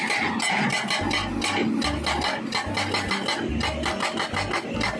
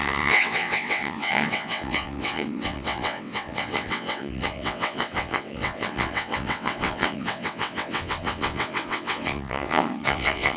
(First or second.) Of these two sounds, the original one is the first